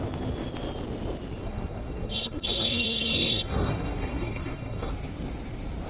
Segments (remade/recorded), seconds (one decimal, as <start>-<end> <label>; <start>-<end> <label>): 0.0-1.4 recorded; 1.4-4.9 remade; 4.9-5.9 recorded

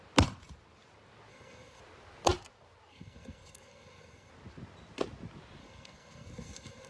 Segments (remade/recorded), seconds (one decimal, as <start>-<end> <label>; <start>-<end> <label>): 0.0-1.3 recorded; 1.3-1.8 remade; 1.8-2.9 recorded; 2.9-4.3 remade; 4.3-5.6 recorded; 5.6-6.9 remade

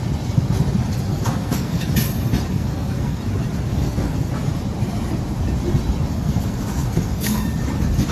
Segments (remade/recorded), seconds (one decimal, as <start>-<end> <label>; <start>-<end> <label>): 0.0-1.1 recorded; 1.1-1.9 remade; 1.9-2.5 recorded; 2.5-3.2 remade; 3.2-3.7 recorded; 3.7-4.3 remade; 4.3-6.1 recorded; 6.1-7.4 remade; 7.4-8.1 recorded

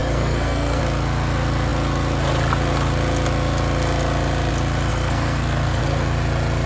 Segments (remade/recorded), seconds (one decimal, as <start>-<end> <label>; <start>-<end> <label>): 0.0-0.8 remade; 0.8-4.9 recorded; 4.9-5.8 remade; 5.8-6.7 recorded

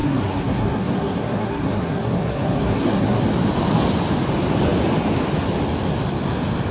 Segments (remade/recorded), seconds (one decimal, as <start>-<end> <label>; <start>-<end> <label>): 0.0-3.2 remade; 3.2-6.7 recorded

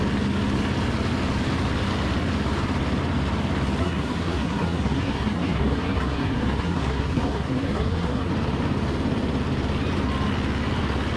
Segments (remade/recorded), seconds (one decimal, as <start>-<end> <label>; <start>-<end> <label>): 0.0-3.8 recorded; 3.8-8.3 remade; 8.3-11.2 recorded

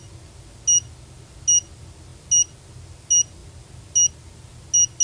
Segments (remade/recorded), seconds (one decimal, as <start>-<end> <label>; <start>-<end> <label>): 0.0-5.0 recorded

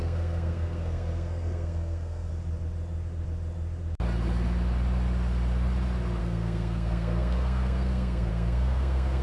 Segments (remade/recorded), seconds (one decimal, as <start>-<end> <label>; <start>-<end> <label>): 0.0-2.3 remade; 2.3-6.2 recorded; 6.2-9.2 remade